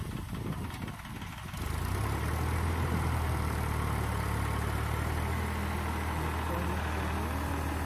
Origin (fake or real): real